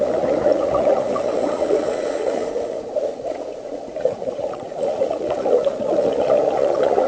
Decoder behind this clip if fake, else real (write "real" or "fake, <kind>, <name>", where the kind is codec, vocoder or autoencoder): fake, vocoder, Vocos